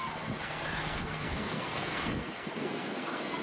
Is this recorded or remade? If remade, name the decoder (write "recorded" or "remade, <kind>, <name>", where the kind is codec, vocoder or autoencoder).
remade, codec, SNAC